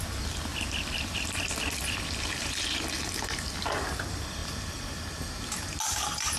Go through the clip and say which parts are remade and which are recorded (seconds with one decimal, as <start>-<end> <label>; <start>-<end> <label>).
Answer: 0.0-6.4 recorded